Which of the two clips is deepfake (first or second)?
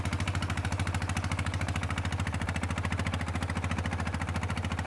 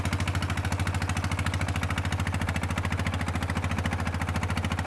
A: first